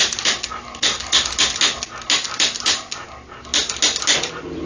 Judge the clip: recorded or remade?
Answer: recorded